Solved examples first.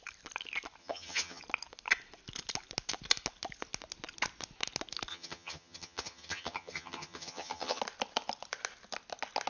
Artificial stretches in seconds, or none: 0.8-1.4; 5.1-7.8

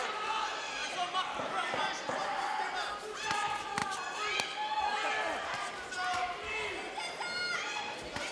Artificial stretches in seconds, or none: none

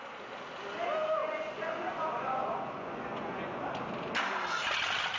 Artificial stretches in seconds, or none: 1.2-3.6

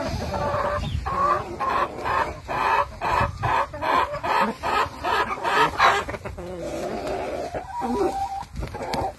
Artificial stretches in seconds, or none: none

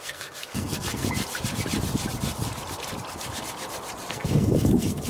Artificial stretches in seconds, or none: 0.0-1.0; 4.1-5.1

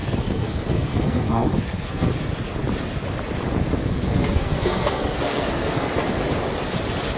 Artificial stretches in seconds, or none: 0.0-2.3; 3.8-5.9

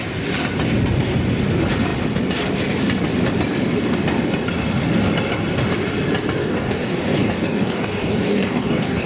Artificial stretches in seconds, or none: 6.4-9.1

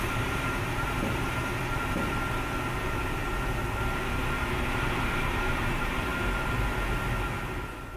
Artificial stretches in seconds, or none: 0.0-1.5; 4.4-6.1